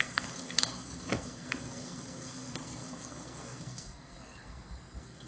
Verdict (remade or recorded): remade